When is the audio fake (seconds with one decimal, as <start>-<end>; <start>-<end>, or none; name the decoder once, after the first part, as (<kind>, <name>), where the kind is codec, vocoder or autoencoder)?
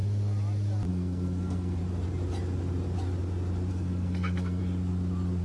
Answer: 0.9-1.8 (codec, SNAC); 3.7-4.6